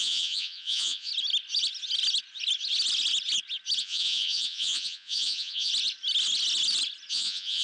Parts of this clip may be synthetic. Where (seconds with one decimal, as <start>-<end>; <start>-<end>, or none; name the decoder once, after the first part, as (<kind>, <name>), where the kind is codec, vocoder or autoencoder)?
0.0-1.1 (vocoder, Vocos); 3.8-5.7; 7.1-7.6